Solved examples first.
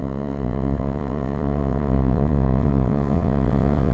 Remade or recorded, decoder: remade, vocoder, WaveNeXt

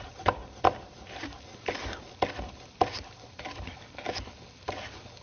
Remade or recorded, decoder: recorded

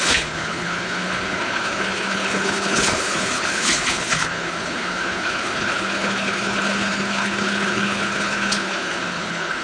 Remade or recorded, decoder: remade, codec, HILCodec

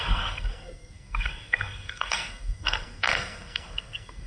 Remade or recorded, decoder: remade, codec, SNAC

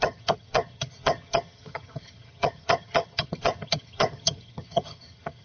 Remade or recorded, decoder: remade, vocoder, HiFi-GAN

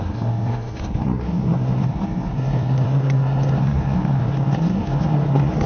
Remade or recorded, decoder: remade, codec, SNAC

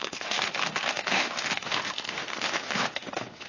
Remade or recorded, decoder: remade, autoencoder, DAC-VAE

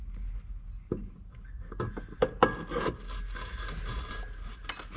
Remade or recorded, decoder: recorded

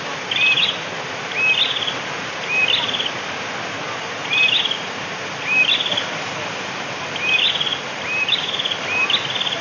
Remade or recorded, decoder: recorded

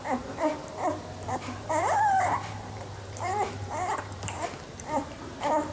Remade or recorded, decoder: remade, vocoder, BigVGAN v2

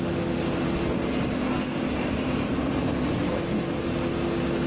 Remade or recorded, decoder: recorded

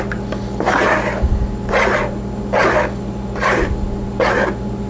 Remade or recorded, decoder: recorded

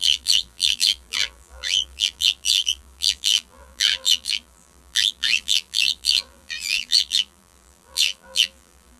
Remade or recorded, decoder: remade, vocoder, BigVGAN v2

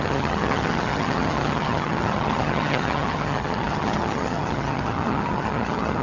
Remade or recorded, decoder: remade, vocoder, HiFi-GAN